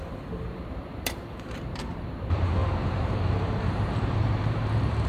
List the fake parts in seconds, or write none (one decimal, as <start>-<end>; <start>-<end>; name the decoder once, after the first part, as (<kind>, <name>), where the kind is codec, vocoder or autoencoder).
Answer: 0.0-5.1 (vocoder, BigVGAN v2)